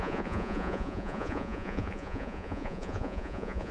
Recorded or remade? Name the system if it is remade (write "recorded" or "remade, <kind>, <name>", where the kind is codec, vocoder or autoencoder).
remade, vocoder, Vocos